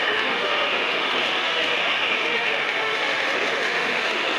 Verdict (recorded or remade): remade